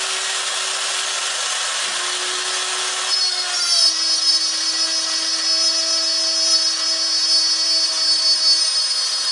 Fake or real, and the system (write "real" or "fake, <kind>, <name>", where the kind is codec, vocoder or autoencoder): real